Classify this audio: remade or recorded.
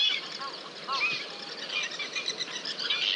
recorded